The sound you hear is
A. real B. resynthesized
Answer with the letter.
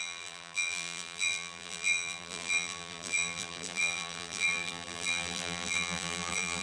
B